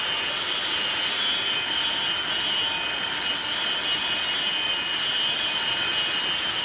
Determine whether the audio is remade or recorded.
recorded